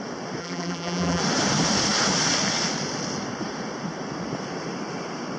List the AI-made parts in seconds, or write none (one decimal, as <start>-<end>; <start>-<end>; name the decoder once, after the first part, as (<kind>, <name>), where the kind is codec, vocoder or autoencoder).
0.4-1.2 (vocoder, BigVGAN v2)